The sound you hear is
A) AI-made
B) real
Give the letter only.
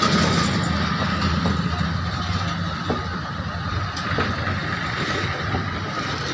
B